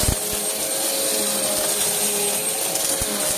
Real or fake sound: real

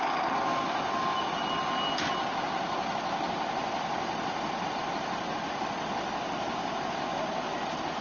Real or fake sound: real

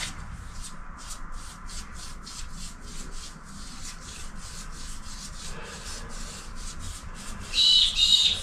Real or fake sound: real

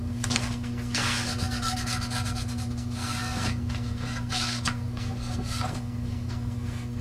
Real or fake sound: fake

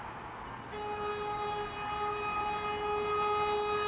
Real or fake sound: real